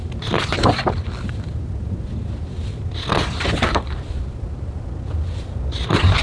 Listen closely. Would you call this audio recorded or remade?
remade